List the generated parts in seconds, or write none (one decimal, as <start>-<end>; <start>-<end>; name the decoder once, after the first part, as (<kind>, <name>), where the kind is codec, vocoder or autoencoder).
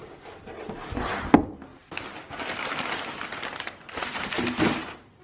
none